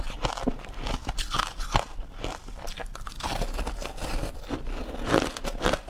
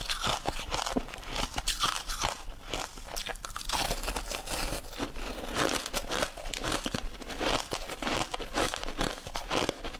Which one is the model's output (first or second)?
second